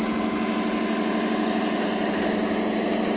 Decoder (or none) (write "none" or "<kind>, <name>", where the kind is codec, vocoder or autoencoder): none